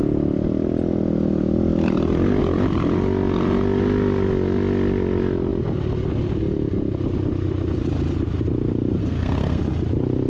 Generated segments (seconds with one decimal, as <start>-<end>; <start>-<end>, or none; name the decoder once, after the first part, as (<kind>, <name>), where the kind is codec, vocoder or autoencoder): 9.0-9.6 (codec, SNAC)